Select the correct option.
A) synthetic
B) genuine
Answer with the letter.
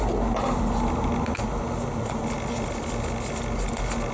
B